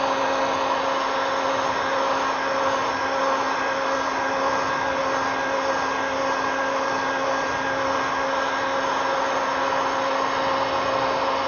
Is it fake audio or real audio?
real